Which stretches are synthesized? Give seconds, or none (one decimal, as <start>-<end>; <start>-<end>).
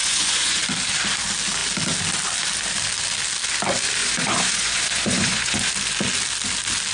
0.0-0.6; 4.0-5.7